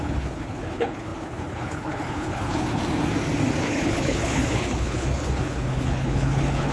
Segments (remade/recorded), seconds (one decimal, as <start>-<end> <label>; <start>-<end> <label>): 0.0-2.8 remade; 2.8-3.6 recorded; 3.6-6.7 remade